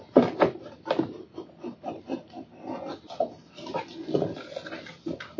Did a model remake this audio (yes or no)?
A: no